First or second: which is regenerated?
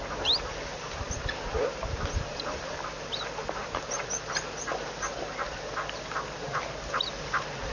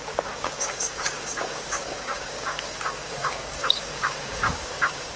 second